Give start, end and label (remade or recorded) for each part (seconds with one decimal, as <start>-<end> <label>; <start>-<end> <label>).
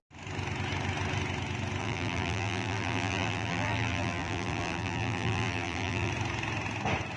0.0-1.8 recorded; 1.8-6.1 remade; 6.1-7.2 recorded